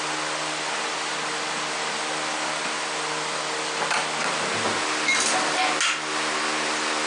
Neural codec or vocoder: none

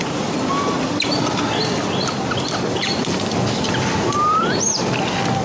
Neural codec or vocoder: vocoder, BigVGAN v2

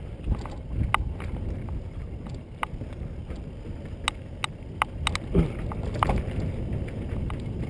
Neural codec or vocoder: none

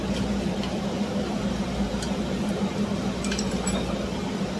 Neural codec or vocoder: vocoder, BigVGAN v2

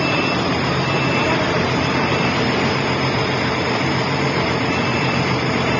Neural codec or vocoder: vocoder, BigVGAN v2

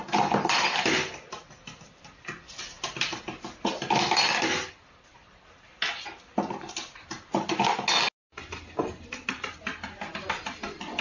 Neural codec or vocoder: none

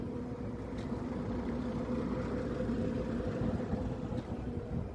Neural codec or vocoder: none